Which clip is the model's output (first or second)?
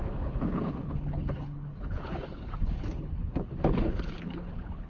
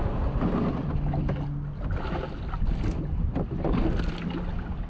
first